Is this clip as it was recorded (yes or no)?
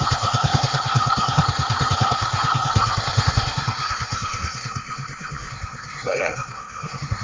no